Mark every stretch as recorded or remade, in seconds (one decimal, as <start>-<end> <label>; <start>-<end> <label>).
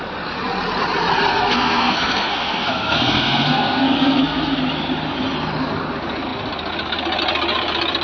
0.0-1.3 recorded; 1.3-4.6 remade; 4.6-8.0 recorded